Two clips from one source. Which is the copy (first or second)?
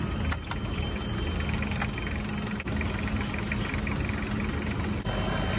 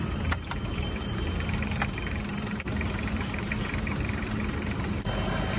second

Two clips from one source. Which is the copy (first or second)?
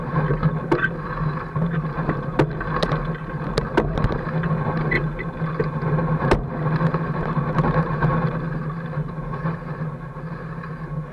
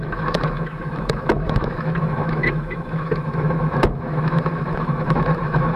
second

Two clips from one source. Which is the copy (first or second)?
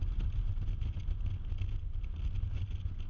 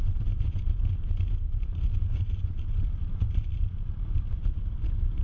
second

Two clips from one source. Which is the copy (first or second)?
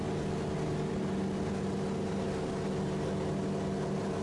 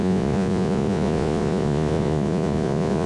second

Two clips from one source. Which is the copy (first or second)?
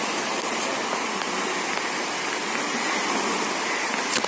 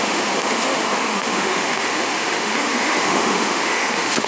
second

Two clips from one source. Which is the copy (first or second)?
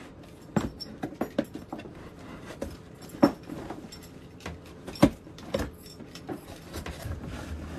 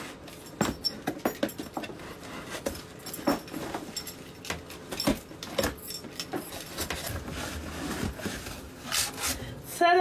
first